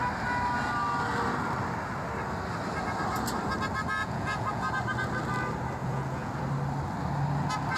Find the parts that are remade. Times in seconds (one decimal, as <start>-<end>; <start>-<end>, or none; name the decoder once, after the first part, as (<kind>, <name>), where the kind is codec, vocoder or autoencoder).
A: 4.0-4.7 (vocoder, Vocos); 5.8-6.4